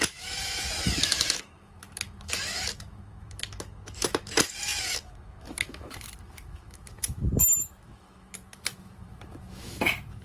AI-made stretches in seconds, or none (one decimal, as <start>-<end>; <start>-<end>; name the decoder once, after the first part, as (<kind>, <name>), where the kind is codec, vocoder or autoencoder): 0.0-10.2 (autoencoder, DAC-VAE)